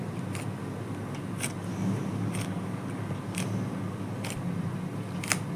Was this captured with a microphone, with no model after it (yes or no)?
yes